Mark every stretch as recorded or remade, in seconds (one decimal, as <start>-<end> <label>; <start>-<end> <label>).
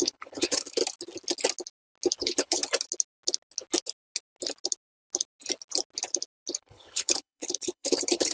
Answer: 0.0-0.8 remade; 0.8-2.2 recorded; 2.2-2.6 remade; 2.6-6.6 recorded; 6.6-8.3 remade